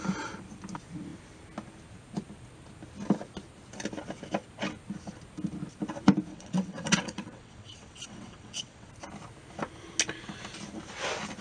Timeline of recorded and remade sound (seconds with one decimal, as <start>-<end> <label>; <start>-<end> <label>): 0.0-6.3 recorded; 6.3-8.9 remade; 8.9-11.4 recorded

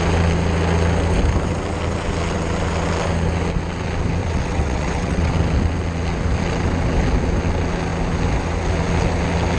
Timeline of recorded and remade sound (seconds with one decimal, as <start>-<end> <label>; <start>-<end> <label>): 0.0-4.2 recorded; 4.2-5.3 remade; 5.3-9.6 recorded

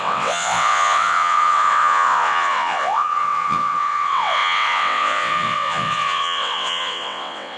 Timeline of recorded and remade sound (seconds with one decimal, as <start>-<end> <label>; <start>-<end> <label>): 0.0-7.6 remade

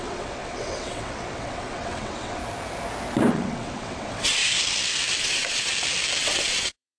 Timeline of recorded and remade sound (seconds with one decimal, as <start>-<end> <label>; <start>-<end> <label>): 0.0-2.4 remade; 2.4-3.3 recorded; 3.3-4.4 remade; 4.4-5.2 recorded; 5.2-5.7 remade; 5.7-6.2 recorded; 6.2-7.0 remade

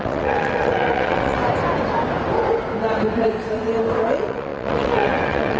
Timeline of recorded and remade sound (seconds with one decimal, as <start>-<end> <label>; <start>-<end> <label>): 0.0-1.4 remade; 1.4-4.1 recorded; 4.1-5.6 remade

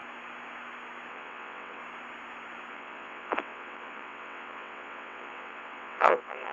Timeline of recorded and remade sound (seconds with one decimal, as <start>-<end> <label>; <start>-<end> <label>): 0.0-1.1 recorded; 1.1-1.8 remade; 1.8-2.7 recorded; 2.7-6.5 remade

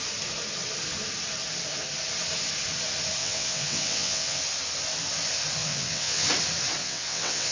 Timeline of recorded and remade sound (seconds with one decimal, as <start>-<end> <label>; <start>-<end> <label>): 0.0-3.2 recorded; 3.2-4.4 remade; 4.4-5.6 recorded; 5.6-6.3 remade; 6.3-6.8 recorded; 6.8-7.5 remade